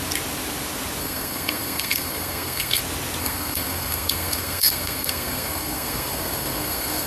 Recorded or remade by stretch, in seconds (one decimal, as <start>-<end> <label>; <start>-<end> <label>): 0.0-1.0 recorded; 1.0-2.8 remade; 2.8-3.2 recorded; 3.2-7.1 remade